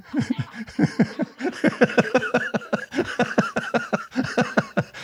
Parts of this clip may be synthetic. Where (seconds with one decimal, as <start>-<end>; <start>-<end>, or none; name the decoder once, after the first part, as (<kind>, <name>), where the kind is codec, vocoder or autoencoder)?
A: 1.2-4.1 (codec, DAC)